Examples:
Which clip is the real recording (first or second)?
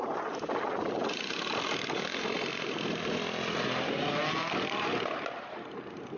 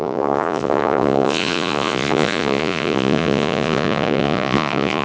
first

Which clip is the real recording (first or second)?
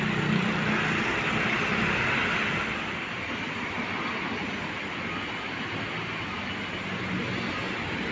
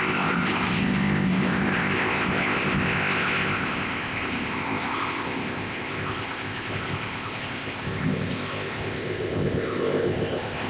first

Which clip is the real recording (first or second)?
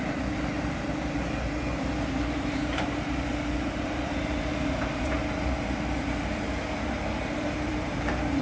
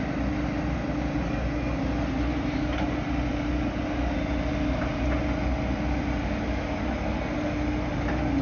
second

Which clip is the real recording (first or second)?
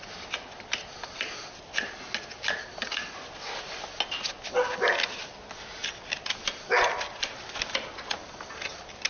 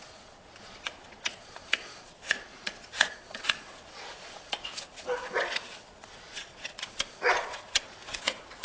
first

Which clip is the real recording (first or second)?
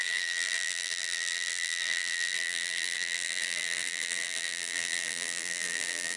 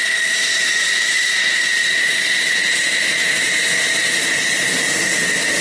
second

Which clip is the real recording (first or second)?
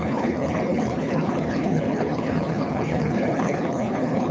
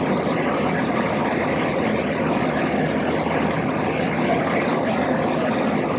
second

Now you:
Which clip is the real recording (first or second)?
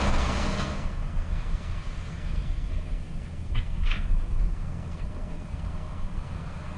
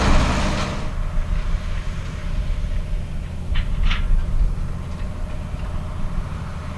second